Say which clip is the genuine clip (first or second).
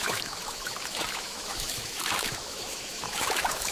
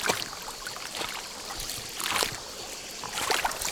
second